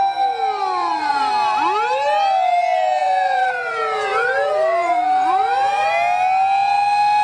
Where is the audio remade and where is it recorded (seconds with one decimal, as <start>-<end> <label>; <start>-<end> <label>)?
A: 0.0-0.8 recorded; 0.8-1.3 remade; 1.3-3.0 recorded; 3.0-5.9 remade; 5.9-7.2 recorded